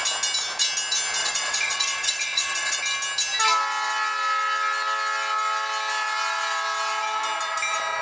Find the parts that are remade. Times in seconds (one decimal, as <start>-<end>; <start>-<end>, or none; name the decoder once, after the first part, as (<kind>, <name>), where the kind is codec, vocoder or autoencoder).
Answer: 1.2-2.8 (vocoder, WaveNeXt)

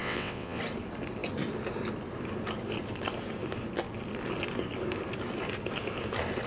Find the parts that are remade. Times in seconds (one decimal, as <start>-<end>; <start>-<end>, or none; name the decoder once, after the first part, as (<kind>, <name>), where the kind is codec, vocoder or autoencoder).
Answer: 0.0-0.6 (vocoder, WaveNeXt)

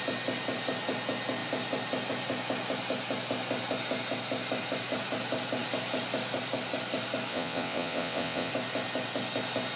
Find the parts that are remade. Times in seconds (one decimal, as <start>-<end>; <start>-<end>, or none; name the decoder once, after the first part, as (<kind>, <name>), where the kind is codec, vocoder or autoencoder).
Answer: 7.3-8.5 (vocoder, WaveNeXt)

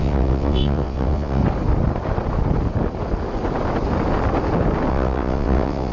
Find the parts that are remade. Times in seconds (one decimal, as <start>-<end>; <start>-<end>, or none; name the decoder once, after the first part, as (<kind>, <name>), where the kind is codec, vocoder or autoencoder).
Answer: 0.0-1.4 (vocoder, WaveNeXt); 4.9-5.9

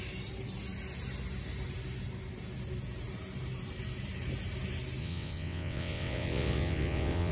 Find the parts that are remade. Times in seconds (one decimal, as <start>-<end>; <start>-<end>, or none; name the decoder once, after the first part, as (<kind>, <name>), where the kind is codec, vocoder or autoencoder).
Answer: 5.0-7.3 (vocoder, WaveNeXt)

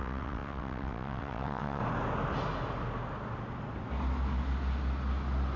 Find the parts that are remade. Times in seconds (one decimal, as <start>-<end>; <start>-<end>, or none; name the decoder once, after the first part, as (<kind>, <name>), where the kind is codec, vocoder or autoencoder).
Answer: 0.0-1.8 (vocoder, WaveNeXt)

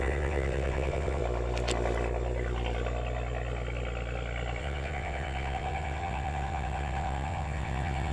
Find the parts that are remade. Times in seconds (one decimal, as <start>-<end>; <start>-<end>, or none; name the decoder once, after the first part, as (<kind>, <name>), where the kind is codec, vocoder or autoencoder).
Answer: 0.0-1.2 (vocoder, WaveNeXt); 4.6-8.1